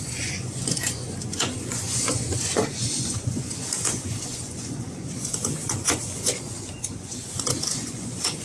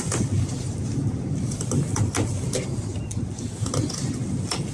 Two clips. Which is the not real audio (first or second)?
first